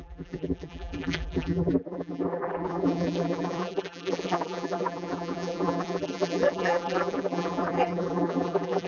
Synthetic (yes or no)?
yes